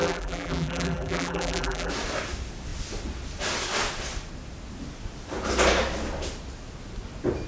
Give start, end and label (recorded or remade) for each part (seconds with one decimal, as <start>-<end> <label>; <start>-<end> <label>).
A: 0.0-1.9 remade; 1.9-7.5 recorded